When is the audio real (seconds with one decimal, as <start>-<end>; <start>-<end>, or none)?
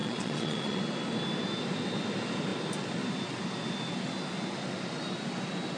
0.8-5.8